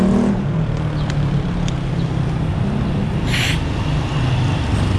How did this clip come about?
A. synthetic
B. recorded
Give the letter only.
B